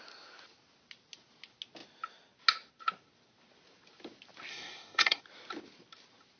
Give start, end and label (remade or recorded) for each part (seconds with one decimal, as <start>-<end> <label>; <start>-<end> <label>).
0.0-4.5 recorded; 4.5-5.2 remade; 5.2-6.4 recorded